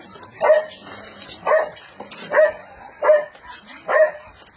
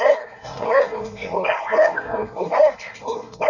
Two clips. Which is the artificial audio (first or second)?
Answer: second